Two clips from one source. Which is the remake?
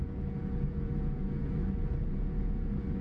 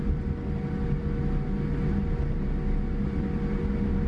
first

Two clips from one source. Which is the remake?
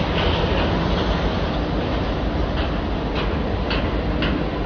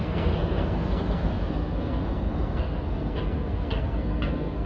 second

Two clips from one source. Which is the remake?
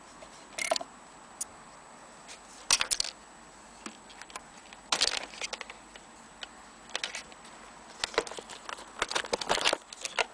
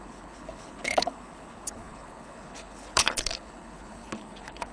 second